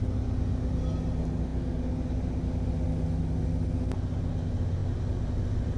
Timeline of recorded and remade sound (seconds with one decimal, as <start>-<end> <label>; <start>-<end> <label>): 0.0-4.8 recorded; 4.8-5.8 remade